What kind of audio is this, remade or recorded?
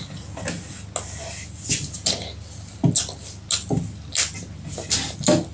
recorded